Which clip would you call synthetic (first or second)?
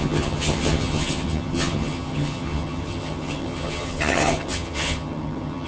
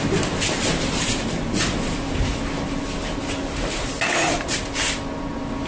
first